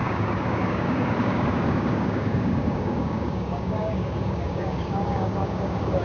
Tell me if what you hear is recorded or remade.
remade